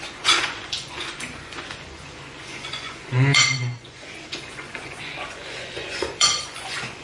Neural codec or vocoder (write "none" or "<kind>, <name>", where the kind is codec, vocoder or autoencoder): vocoder, Vocos